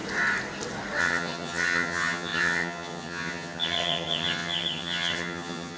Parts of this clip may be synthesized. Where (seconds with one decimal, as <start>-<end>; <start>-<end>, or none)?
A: 1.0-5.8